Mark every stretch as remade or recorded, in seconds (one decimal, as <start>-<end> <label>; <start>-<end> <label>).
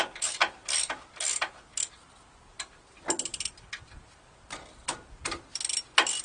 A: 0.0-6.2 recorded